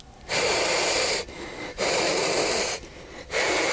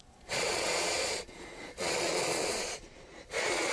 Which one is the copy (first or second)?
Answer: second